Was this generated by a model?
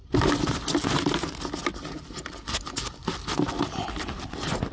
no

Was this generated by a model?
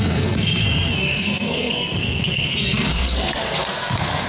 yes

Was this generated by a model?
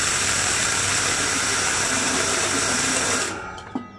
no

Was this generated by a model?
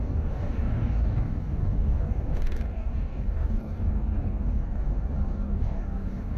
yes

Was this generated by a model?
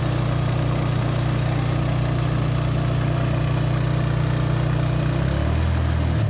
no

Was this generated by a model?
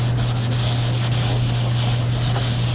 no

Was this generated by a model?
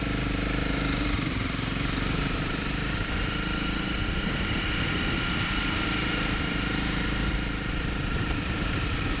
yes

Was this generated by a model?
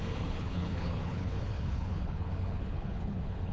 yes